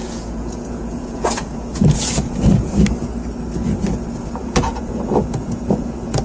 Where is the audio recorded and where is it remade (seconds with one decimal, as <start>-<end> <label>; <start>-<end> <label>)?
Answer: 0.0-2.7 remade; 2.7-4.4 recorded; 4.4-6.2 remade